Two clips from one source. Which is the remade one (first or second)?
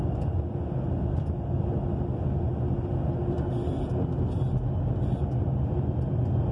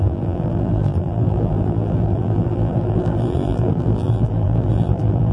second